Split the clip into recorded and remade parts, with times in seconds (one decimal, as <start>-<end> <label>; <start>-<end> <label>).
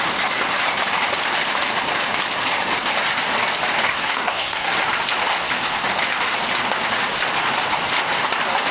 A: 0.0-3.8 recorded; 3.8-4.7 remade; 4.7-8.7 recorded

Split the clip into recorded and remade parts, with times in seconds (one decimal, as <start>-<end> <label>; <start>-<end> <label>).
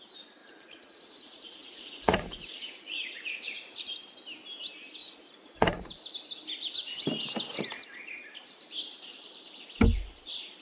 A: 0.0-0.4 recorded; 0.4-3.8 remade; 3.8-5.0 recorded; 5.0-5.9 remade; 5.9-10.6 recorded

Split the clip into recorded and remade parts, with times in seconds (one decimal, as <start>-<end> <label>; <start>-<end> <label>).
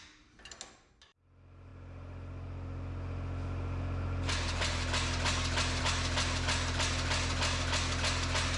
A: 0.0-8.6 recorded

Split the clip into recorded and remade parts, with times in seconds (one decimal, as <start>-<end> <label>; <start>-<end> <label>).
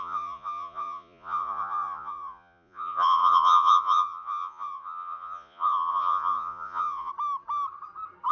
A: 0.0-7.1 remade; 7.1-8.3 recorded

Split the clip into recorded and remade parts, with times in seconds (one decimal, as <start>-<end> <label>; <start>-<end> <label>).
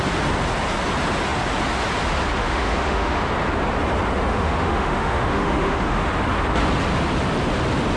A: 0.0-2.4 recorded; 2.4-3.2 remade; 3.2-4.3 recorded; 4.3-6.1 remade; 6.1-8.0 recorded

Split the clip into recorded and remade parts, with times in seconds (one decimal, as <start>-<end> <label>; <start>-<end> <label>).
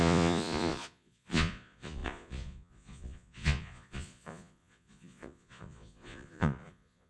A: 0.0-7.1 remade